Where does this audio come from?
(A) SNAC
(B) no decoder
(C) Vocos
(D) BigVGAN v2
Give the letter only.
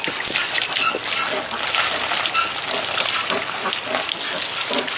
B